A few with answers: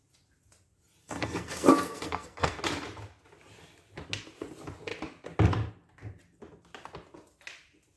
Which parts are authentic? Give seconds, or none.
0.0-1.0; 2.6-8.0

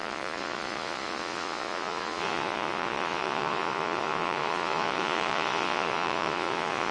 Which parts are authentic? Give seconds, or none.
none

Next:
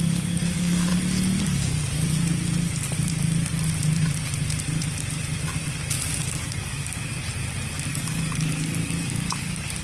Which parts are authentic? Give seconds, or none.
0.9-1.4; 2.3-6.2; 7.2-7.9